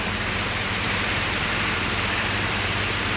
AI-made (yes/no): yes